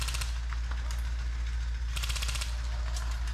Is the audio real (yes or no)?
yes